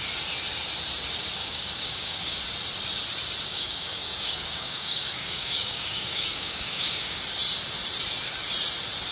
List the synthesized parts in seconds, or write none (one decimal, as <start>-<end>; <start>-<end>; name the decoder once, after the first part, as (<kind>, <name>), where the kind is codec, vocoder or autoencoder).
1.4-2.4 (codec, DAC); 3.5-7.2